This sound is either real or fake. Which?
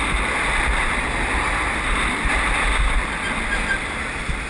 real